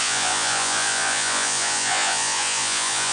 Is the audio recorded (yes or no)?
no